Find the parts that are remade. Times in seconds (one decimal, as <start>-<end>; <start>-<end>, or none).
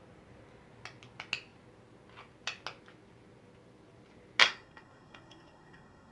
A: 4.4-6.1